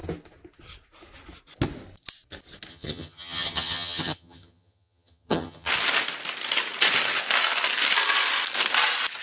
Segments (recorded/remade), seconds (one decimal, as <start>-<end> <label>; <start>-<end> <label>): 0.0-2.7 recorded; 2.7-5.7 remade; 5.7-9.2 recorded